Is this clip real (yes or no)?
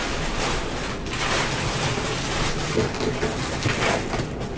yes